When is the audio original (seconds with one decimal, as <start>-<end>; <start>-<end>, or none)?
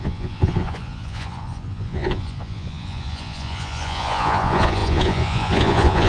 none